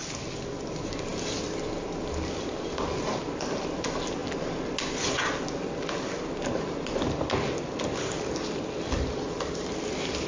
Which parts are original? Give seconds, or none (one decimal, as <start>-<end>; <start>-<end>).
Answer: 0.0-10.3